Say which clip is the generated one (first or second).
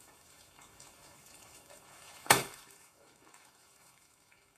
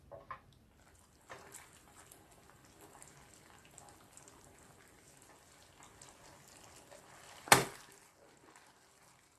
first